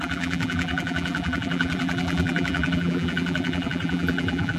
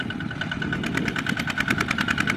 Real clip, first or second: second